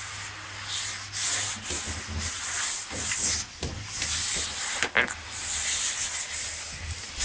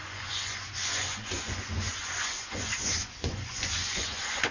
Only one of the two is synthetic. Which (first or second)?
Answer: second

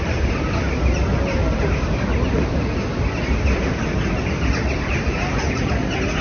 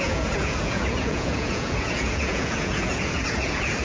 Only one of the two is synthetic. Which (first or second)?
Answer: second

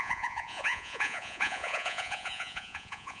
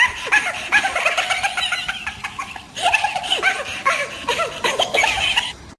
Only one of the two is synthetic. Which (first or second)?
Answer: first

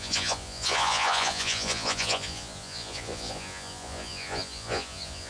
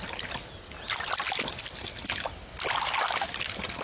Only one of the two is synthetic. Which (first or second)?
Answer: first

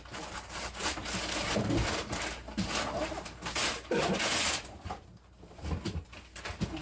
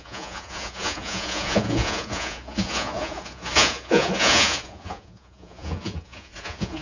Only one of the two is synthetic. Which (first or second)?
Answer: second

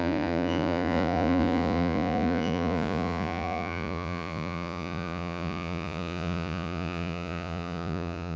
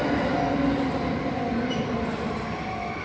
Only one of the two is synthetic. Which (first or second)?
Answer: first